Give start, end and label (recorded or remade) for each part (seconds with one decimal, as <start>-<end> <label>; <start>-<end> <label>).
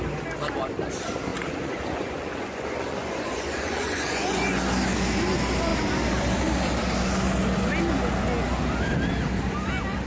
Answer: 0.0-1.3 recorded; 1.3-4.6 remade; 4.6-10.1 recorded